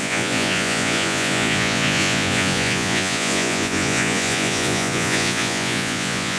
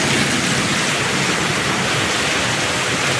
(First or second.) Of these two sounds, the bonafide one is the second